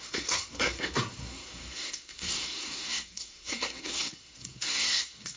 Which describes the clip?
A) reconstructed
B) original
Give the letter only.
A